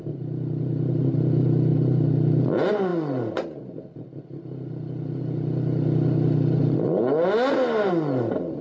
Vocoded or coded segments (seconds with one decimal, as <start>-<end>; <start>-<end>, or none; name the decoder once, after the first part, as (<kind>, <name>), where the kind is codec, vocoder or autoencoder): none